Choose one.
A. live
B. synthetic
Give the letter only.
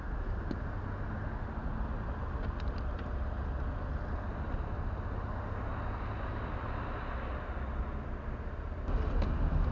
A